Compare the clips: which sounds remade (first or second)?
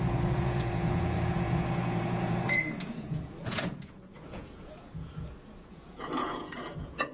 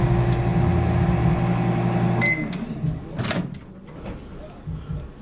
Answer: first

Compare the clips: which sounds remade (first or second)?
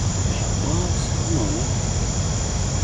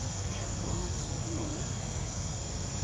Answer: second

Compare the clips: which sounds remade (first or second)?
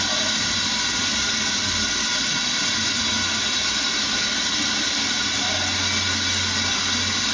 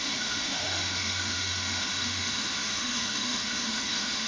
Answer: second